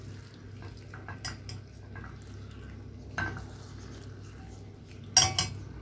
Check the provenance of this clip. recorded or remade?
recorded